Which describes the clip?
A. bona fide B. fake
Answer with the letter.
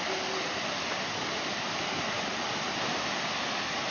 A